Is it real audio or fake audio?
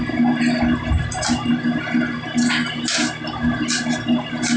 real